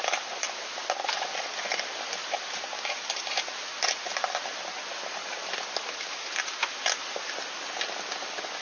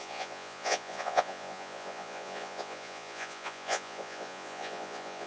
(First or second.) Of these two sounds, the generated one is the second